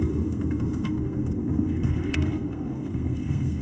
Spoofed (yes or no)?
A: yes